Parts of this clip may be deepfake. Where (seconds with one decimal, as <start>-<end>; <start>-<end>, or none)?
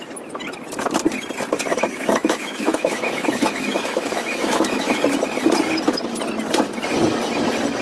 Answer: 1.7-5.0